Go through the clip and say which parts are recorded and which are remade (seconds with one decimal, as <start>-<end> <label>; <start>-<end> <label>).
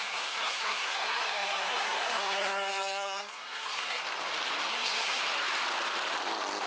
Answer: 0.0-4.0 remade; 4.0-4.7 recorded; 4.7-5.2 remade; 5.2-6.7 recorded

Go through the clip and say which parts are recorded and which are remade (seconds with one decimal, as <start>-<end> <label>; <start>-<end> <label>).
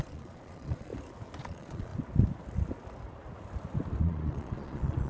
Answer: 0.0-0.9 remade; 0.9-1.4 recorded; 1.4-1.9 remade; 1.9-4.0 recorded; 4.0-5.1 remade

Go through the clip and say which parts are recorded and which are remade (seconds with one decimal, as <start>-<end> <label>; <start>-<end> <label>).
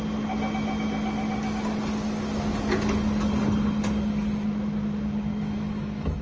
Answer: 0.0-5.3 recorded; 5.3-6.2 remade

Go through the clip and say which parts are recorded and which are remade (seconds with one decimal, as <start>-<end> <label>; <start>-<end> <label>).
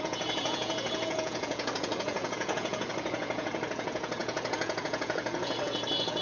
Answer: 0.0-6.2 remade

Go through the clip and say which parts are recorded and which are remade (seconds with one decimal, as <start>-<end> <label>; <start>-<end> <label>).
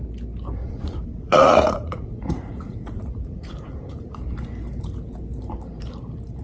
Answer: 0.0-0.6 recorded; 0.6-4.2 remade; 4.2-6.4 recorded